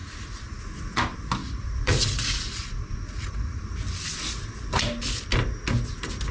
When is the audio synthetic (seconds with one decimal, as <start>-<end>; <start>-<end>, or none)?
0.0-0.6; 1.4-3.6